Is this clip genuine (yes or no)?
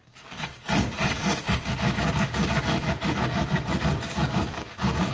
no